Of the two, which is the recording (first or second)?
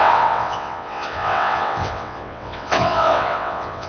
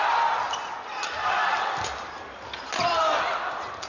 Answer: second